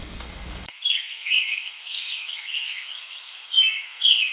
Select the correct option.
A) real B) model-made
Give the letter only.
B